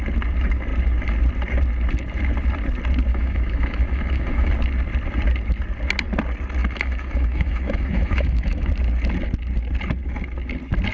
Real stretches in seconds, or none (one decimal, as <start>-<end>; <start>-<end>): 0.0-3.1; 4.5-6.6; 8.7-10.9